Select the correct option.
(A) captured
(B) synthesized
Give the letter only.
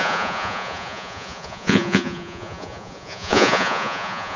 B